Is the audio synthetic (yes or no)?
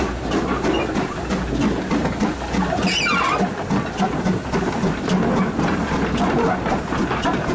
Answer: no